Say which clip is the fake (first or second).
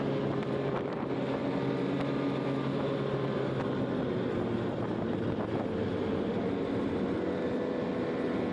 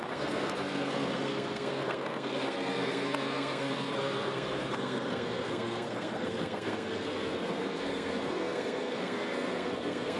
second